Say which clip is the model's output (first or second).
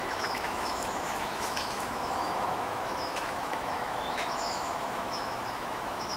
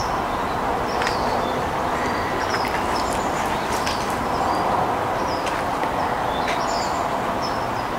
first